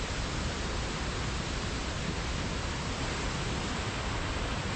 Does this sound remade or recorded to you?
recorded